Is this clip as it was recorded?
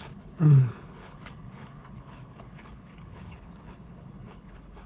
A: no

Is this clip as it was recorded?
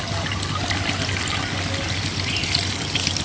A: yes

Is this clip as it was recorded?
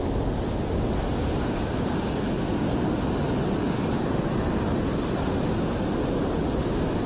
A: yes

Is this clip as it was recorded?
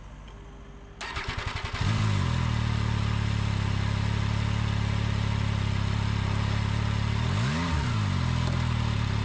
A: yes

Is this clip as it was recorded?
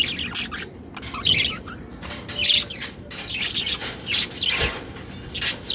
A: yes